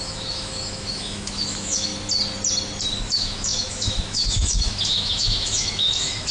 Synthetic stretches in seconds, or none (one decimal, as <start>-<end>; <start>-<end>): 0.0-1.9; 3.0-6.3